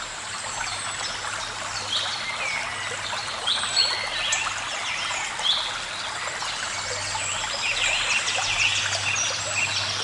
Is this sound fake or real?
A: real